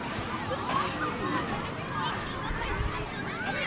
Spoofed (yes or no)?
no